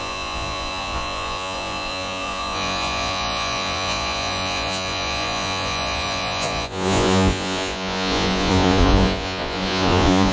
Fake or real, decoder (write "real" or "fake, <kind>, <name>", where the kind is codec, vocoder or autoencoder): fake, vocoder, Vocos